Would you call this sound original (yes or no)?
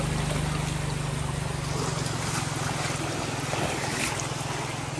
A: yes